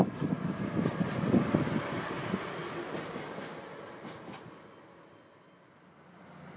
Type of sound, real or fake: real